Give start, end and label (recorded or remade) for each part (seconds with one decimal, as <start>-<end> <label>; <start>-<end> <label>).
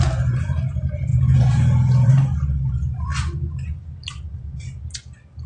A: 0.0-1.1 recorded; 1.1-2.1 remade; 2.1-5.5 recorded